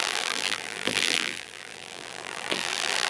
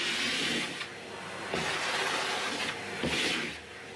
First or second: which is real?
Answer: second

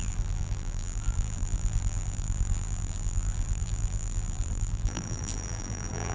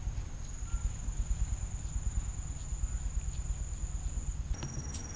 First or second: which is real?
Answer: second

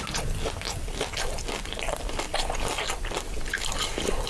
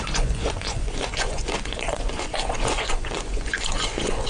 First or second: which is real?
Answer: first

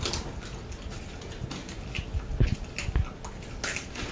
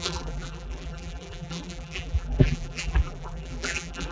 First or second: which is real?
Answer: first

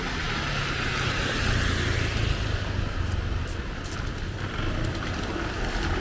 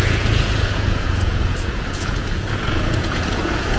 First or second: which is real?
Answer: first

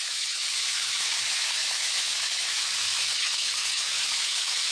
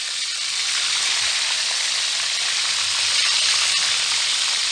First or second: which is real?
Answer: second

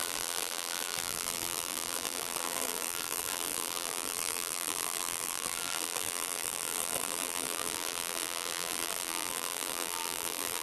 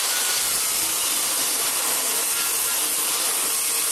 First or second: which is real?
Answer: second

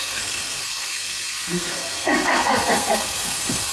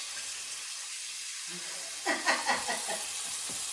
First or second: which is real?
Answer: second